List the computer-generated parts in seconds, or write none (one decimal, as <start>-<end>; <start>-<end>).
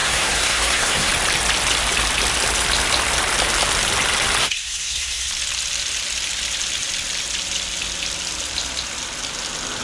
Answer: 0.0-1.1; 4.4-5.3